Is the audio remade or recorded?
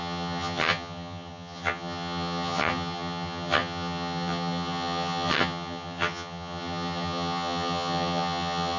remade